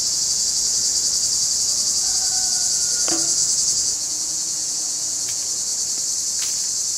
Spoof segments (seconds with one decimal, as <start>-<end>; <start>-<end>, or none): 0.0-0.9; 1.6-5.7